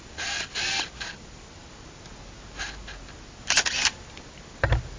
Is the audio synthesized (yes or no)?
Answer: no